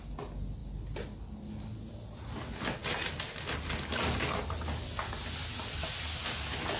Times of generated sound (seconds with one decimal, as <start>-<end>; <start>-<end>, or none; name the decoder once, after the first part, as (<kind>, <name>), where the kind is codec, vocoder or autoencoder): none